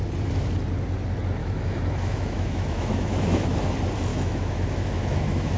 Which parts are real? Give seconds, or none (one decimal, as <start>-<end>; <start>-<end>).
0.0-1.4; 3.6-4.1